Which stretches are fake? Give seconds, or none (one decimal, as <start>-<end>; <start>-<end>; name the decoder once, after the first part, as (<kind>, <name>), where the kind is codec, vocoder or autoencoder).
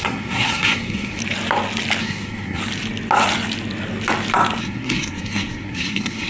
0.0-1.2 (codec, SNAC); 2.0-2.6; 4.6-6.3